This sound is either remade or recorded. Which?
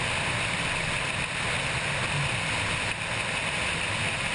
recorded